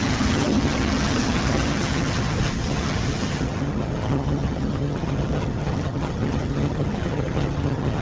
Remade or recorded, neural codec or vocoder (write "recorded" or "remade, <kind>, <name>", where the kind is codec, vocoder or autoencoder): remade, vocoder, HiFi-GAN